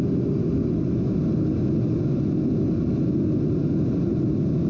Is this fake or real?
real